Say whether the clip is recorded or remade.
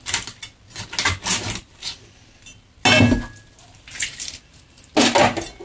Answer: recorded